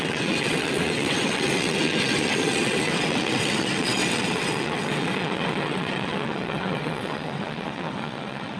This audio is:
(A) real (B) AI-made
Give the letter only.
B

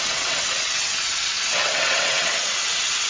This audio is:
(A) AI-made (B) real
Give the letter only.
A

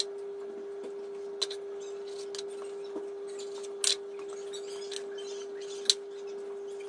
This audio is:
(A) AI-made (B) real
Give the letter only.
B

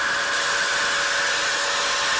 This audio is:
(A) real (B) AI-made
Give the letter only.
A